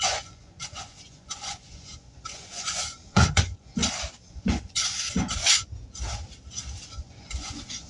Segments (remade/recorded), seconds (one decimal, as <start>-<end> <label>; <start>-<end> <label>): 0.0-3.8 remade; 3.8-4.3 recorded; 4.3-5.4 remade; 5.4-6.9 recorded; 6.9-7.9 remade